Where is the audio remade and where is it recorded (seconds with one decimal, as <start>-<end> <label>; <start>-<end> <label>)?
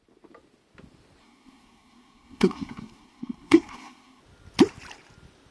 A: 0.0-1.2 recorded; 1.2-4.2 remade; 4.2-5.5 recorded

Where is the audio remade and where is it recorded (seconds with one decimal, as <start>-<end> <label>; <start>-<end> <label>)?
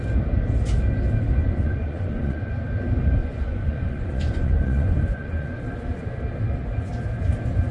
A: 0.0-1.4 recorded; 1.4-2.5 remade; 2.5-3.2 recorded; 3.2-5.6 remade; 5.6-7.7 recorded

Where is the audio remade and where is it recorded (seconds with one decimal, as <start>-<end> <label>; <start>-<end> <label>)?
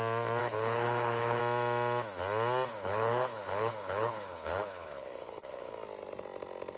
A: 0.0-0.4 recorded; 0.4-1.4 remade; 1.4-2.7 recorded; 2.7-5.7 remade; 5.7-6.8 recorded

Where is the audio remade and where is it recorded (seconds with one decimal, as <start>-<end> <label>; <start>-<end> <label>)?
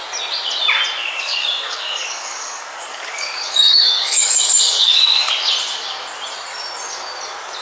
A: 0.0-1.0 recorded; 1.0-5.3 remade; 5.3-7.6 recorded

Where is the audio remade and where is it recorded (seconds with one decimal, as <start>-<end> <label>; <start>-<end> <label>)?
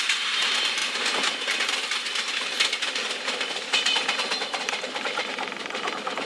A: 0.0-0.8 remade; 0.8-4.6 recorded; 4.6-6.3 remade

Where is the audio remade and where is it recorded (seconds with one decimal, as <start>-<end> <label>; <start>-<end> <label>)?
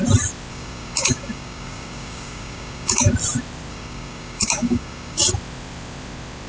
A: 0.0-0.5 recorded; 0.5-3.1 remade; 3.1-3.7 recorded; 3.7-5.3 remade; 5.3-6.5 recorded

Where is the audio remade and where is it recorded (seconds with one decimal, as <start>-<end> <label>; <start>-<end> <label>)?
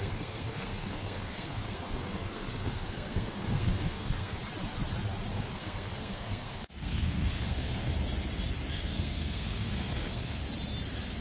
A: 0.0-4.4 remade; 4.4-5.3 recorded; 5.3-7.9 remade; 7.9-8.7 recorded; 8.7-10.4 remade; 10.4-11.2 recorded